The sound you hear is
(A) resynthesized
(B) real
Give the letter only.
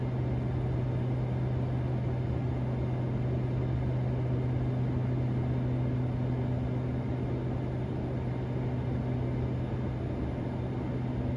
B